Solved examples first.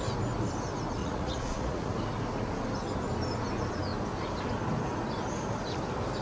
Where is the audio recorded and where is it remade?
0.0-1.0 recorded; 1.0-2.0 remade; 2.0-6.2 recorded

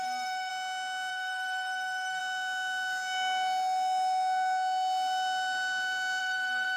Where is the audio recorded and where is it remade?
0.0-0.5 remade; 0.5-1.1 recorded; 1.1-2.2 remade; 2.2-6.2 recorded; 6.2-6.8 remade

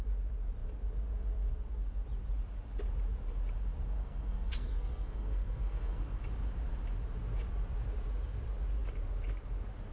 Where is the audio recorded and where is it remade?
0.0-4.0 recorded; 4.0-6.0 remade; 6.0-9.9 recorded

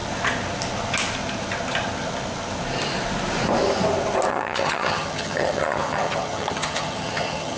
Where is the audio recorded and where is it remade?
0.0-4.3 recorded; 4.3-7.6 remade

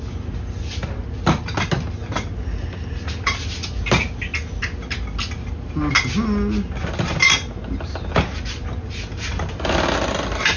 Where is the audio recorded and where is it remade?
0.0-10.6 recorded

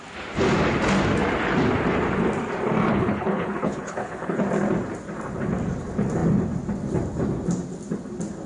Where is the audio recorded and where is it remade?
0.0-2.9 recorded; 2.9-4.4 remade; 4.4-8.5 recorded

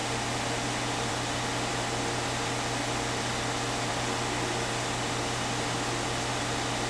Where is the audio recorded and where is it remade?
0.0-6.9 recorded

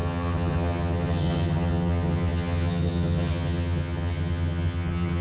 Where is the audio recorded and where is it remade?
0.0-5.2 remade